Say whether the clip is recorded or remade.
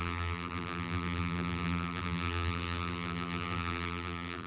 remade